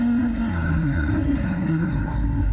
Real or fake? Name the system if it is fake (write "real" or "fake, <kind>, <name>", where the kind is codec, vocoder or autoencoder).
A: fake, codec, SNAC